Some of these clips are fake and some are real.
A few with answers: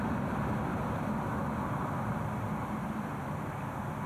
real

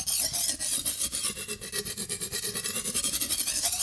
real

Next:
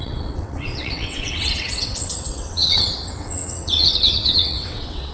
fake